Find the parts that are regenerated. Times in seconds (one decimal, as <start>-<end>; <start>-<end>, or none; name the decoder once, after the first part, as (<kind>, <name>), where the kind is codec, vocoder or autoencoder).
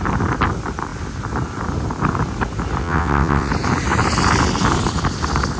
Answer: 2.8-3.5 (vocoder, WaveNeXt)